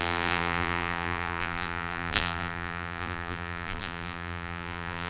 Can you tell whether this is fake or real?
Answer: fake